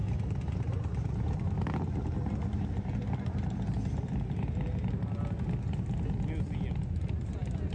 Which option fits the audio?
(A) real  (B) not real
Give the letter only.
A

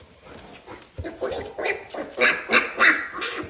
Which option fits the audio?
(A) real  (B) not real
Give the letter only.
A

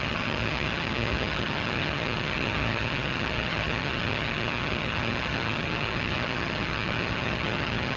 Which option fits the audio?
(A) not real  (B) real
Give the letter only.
A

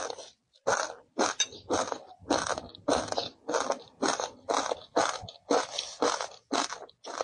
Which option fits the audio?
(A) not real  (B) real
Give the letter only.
B